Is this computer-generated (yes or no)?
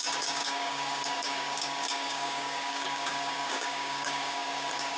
yes